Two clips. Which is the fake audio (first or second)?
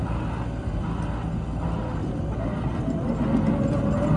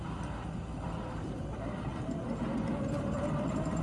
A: second